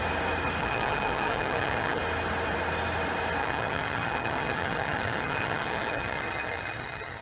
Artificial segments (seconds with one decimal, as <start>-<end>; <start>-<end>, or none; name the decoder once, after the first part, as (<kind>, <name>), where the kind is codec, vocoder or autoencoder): 0.6-2.0 (vocoder, HiFi-GAN); 3.4-7.2